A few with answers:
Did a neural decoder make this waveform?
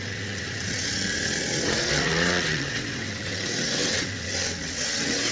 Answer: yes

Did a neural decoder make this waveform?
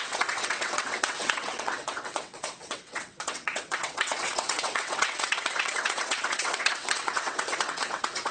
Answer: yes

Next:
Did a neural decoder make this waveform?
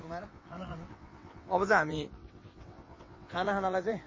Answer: yes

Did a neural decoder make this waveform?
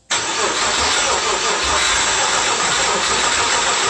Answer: no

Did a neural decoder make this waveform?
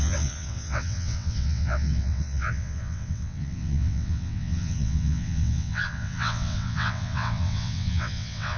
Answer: yes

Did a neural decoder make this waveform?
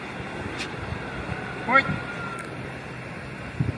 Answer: no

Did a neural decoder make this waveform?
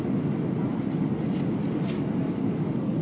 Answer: no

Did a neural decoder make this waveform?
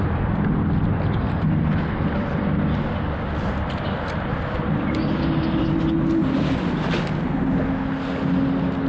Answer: no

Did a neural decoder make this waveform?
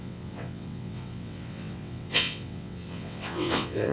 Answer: yes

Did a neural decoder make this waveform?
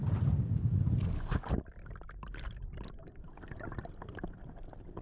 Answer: no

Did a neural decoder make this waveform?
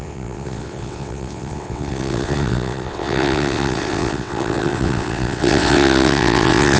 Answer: yes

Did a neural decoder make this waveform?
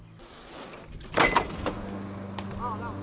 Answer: no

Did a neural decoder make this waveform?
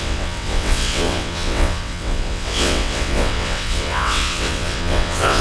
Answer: yes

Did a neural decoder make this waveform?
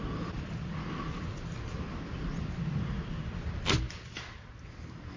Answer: no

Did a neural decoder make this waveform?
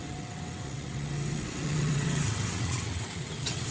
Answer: yes